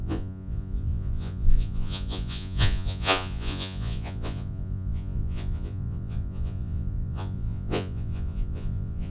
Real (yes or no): no